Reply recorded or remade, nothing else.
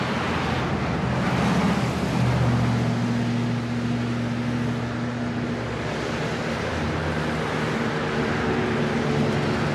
recorded